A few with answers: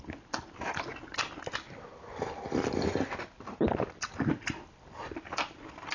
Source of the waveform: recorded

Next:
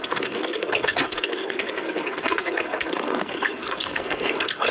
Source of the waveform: remade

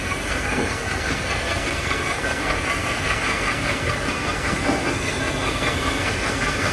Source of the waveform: remade